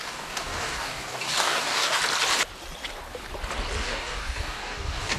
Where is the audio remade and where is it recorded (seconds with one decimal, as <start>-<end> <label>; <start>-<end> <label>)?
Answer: 0.0-2.0 remade; 2.0-3.8 recorded; 3.8-5.2 remade

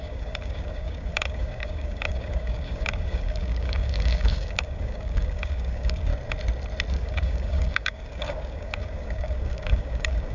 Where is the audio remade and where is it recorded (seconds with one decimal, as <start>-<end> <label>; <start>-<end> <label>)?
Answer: 0.0-6.1 remade; 6.1-6.9 recorded; 6.9-10.3 remade

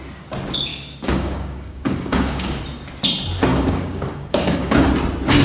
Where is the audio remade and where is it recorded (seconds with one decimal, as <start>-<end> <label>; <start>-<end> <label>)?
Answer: 0.0-0.7 recorded; 0.7-2.6 remade; 2.6-3.5 recorded; 3.5-4.9 remade; 4.9-5.4 recorded

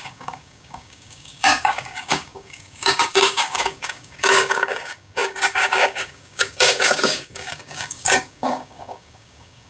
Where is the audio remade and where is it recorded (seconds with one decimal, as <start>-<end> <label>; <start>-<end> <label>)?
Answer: 0.0-9.7 remade

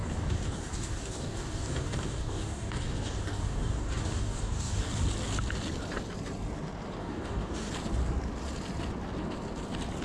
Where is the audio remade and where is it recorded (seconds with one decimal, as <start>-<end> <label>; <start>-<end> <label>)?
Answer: 0.0-4.9 remade; 4.9-7.0 recorded; 7.0-7.7 remade; 7.7-10.0 recorded

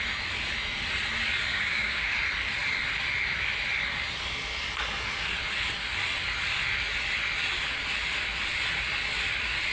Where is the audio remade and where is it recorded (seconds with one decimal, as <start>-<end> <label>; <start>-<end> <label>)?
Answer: 0.0-1.5 recorded; 1.5-2.1 remade; 2.1-9.7 recorded

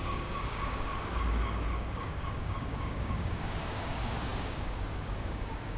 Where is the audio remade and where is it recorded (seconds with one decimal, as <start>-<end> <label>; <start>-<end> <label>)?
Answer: 0.0-5.8 remade